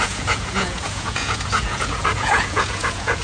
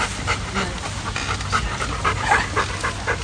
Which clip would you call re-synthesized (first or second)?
first